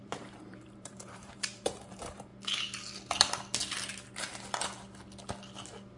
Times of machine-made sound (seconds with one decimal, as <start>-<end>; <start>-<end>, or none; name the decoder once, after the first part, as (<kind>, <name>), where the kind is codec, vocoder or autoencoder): 0.0-2.3 (vocoder, BigVGAN v2)